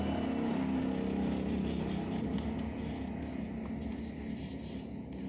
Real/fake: real